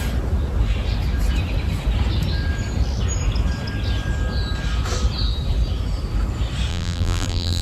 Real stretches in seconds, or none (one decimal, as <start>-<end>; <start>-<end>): 0.0-6.7